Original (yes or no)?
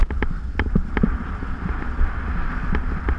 yes